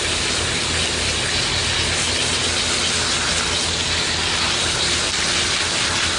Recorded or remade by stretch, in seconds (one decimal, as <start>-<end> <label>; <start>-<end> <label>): 0.0-6.2 recorded